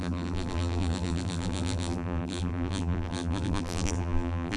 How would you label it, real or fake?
fake